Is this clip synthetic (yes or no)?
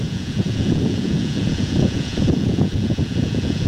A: yes